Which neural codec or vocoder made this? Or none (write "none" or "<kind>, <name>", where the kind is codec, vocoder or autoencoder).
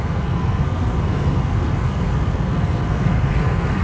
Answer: codec, SNAC